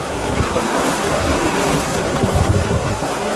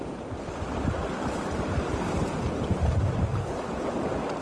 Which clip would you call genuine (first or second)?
second